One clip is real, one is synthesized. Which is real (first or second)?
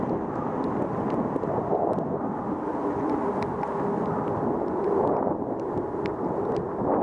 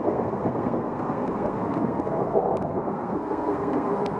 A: first